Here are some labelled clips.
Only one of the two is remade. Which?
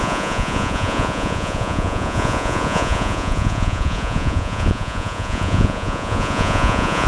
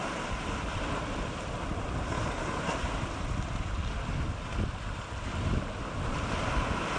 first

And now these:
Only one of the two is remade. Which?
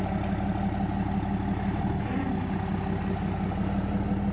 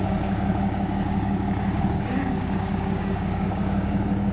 second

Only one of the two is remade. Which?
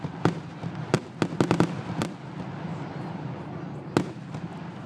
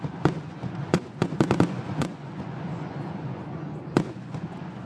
second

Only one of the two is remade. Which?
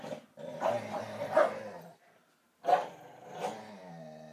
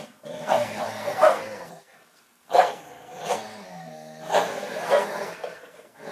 second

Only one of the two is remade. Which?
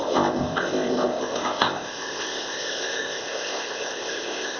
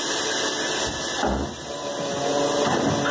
first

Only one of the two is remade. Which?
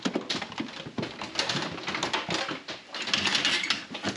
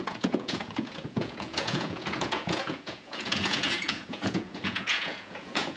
second